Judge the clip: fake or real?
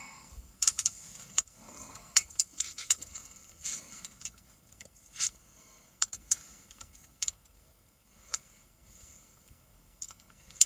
fake